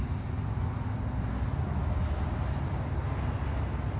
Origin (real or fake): real